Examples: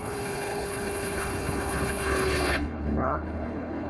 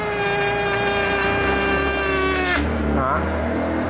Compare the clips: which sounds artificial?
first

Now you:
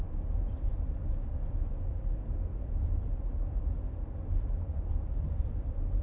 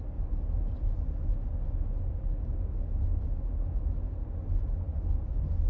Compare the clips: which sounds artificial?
first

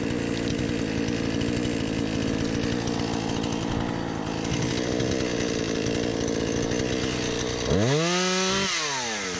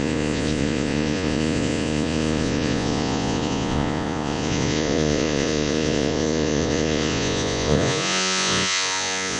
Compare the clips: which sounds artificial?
second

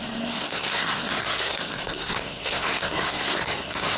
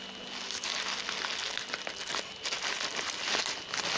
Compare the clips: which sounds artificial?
first